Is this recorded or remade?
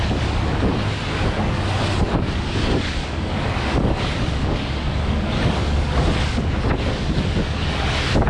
remade